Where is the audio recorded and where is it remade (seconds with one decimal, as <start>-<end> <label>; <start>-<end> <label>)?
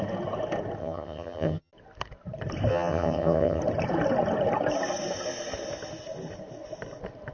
0.0-0.8 recorded; 0.8-1.7 remade; 1.7-2.7 recorded; 2.7-3.6 remade; 3.6-7.3 recorded